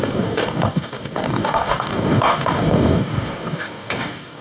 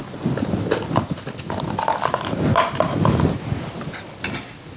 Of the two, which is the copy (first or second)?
first